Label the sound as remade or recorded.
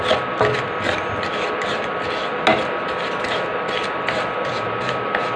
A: recorded